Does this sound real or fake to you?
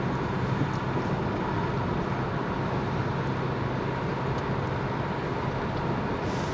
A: real